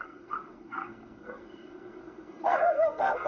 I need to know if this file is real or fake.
fake